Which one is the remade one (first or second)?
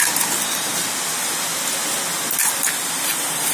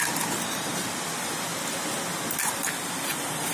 second